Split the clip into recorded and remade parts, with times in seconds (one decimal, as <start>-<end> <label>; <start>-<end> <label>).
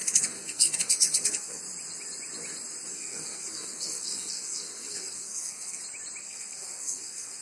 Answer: 0.0-1.6 remade; 1.6-2.9 recorded; 2.9-5.8 remade; 5.8-6.2 recorded; 6.2-7.4 remade